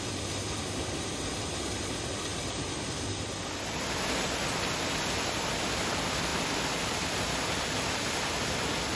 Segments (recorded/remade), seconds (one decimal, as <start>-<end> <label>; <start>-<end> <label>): 0.0-9.0 recorded